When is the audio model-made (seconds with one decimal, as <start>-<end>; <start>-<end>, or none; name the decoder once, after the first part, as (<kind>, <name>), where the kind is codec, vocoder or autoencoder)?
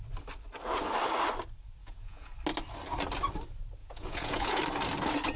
1.8-2.3 (vocoder, Vocos); 3.8-4.6